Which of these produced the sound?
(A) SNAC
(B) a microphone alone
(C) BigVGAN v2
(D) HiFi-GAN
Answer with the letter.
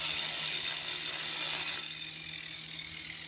B